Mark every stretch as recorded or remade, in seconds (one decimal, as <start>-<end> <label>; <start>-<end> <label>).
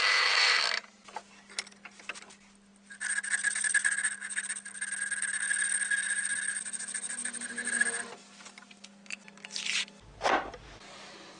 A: 0.0-11.4 recorded